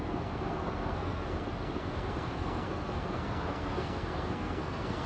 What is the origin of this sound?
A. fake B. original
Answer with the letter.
A